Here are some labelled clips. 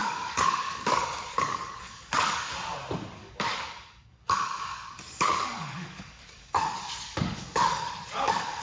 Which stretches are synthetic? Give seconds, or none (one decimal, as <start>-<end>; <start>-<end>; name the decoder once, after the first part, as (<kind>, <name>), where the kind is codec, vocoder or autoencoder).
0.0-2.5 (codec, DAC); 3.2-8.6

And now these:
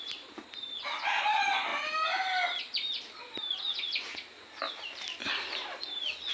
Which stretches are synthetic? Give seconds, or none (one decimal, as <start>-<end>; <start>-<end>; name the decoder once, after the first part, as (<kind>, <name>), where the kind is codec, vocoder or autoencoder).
none

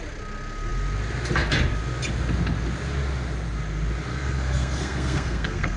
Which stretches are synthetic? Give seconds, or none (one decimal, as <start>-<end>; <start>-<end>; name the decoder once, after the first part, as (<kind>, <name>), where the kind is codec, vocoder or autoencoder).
4.1-5.8 (codec, SNAC)

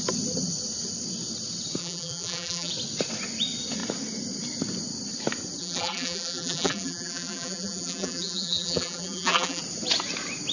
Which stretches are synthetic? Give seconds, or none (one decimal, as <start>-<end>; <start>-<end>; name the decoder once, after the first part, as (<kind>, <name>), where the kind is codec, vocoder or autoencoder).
1.8-2.7 (vocoder, BigVGAN v2); 5.6-9.6